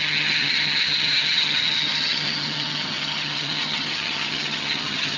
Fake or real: fake